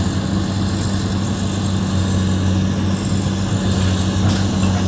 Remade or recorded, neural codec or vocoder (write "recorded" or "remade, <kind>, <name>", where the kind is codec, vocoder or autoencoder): recorded